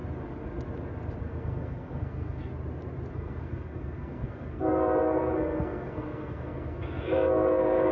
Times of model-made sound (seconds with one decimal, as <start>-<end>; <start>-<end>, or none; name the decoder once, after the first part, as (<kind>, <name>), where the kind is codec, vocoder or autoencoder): 1.2-2.5 (codec, SNAC); 3.1-7.9